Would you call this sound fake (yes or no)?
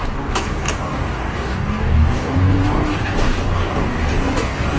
yes